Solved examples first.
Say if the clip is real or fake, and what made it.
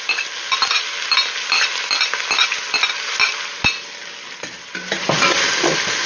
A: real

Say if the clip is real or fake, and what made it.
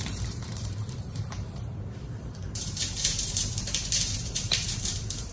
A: fake, vocoder, BigVGAN v2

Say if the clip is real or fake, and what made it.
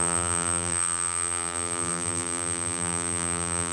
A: fake, vocoder, BigVGAN v2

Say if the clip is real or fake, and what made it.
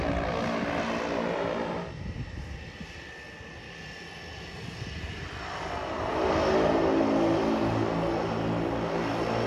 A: real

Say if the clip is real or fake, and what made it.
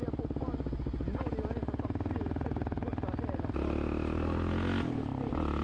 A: real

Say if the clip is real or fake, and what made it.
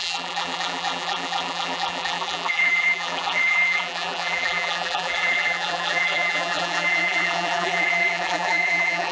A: fake, vocoder, BigVGAN v2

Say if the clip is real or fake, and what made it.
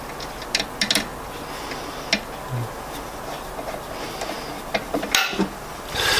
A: real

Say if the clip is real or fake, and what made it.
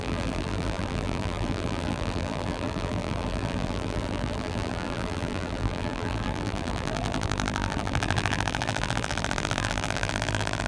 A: fake, vocoder, BigVGAN v2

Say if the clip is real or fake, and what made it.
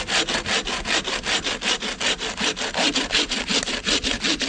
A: real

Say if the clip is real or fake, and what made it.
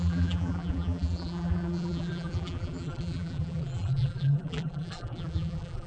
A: fake, vocoder, BigVGAN v2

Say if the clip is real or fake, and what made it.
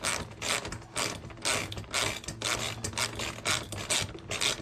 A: real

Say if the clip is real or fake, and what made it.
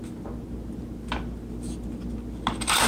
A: real